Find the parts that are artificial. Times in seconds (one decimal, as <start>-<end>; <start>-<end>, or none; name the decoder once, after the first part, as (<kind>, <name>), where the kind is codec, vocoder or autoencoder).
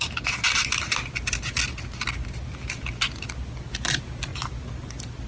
none